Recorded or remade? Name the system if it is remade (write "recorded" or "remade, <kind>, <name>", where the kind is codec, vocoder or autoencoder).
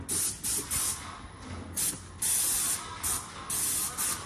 recorded